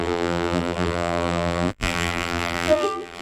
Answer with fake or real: fake